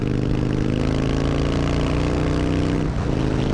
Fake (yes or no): no